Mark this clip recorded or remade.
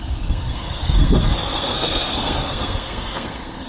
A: remade